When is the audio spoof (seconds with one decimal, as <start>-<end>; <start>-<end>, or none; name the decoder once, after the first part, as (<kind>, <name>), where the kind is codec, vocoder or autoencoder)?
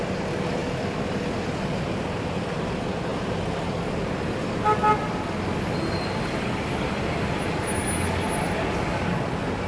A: none